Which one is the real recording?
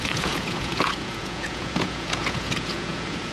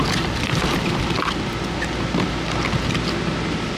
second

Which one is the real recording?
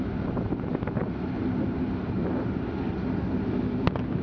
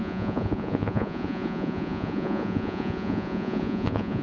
first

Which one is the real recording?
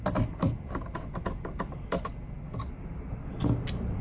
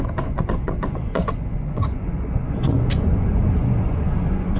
first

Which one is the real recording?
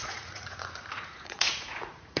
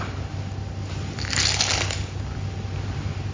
second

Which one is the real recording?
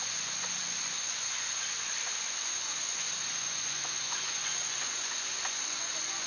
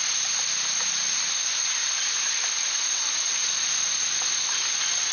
second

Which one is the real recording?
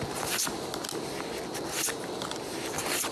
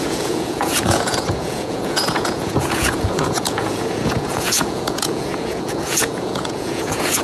first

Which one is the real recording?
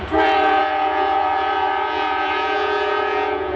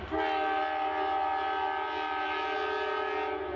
second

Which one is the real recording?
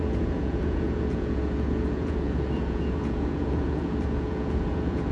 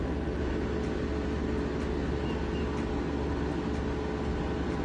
second